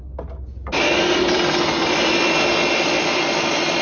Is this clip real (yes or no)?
yes